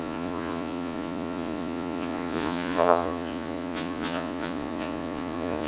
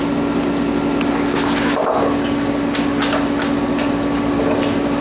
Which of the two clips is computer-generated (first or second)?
first